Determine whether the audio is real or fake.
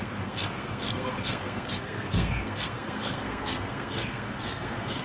fake